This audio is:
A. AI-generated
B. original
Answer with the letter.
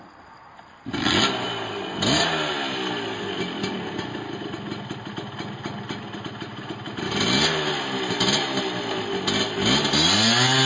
B